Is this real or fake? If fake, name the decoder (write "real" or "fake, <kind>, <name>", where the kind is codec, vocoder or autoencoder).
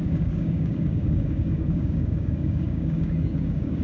fake, codec, DAC